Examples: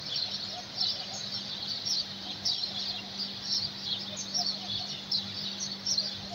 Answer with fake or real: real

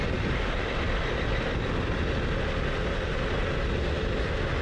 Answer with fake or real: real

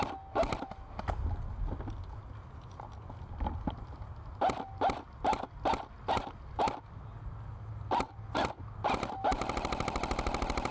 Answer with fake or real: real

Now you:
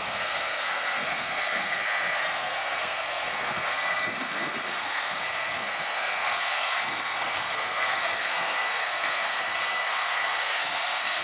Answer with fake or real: fake